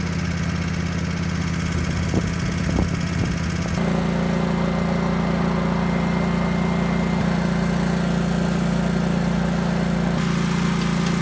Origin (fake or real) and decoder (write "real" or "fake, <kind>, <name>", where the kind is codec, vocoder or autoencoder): real